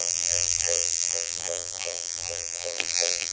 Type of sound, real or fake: fake